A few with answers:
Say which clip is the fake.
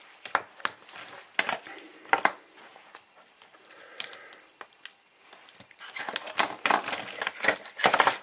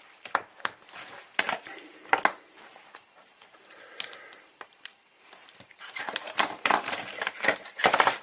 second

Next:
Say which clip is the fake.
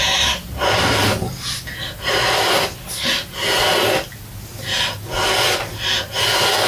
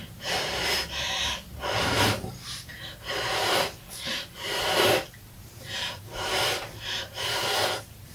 second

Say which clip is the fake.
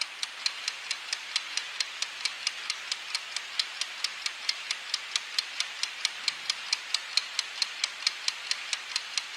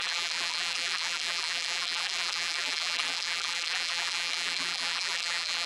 second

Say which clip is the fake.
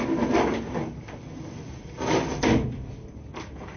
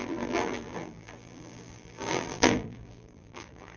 second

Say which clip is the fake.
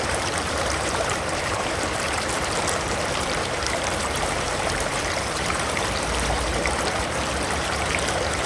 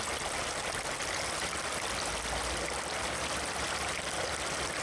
first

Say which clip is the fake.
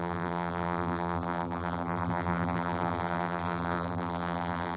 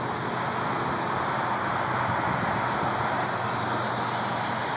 first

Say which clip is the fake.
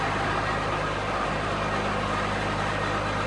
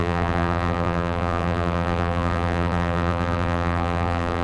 second